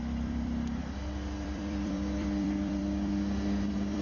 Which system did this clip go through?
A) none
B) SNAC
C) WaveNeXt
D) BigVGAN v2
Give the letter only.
D